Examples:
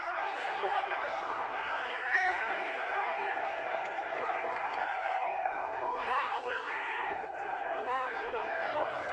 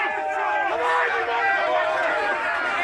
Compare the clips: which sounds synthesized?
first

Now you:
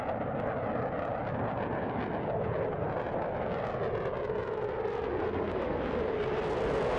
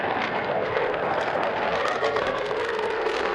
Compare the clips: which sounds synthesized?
second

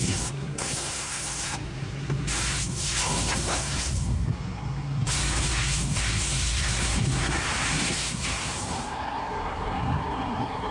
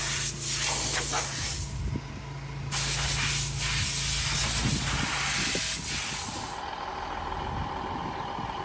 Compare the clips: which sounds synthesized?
first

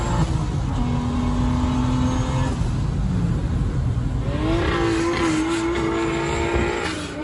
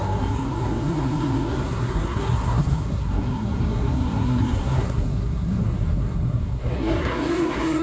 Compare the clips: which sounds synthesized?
second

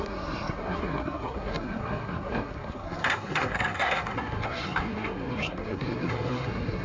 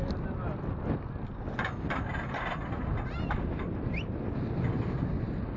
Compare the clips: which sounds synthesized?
first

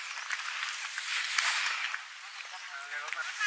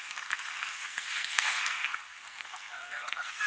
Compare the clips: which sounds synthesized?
second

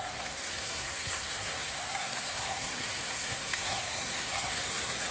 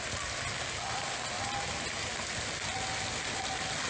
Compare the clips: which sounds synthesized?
first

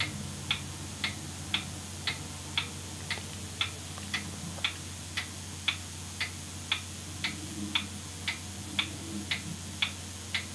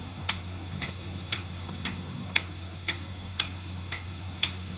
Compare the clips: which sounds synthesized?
second